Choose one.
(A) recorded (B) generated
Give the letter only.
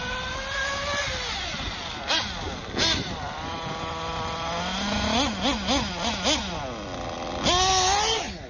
A